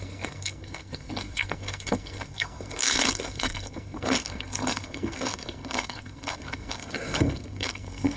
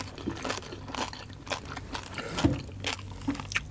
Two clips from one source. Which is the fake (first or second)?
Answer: first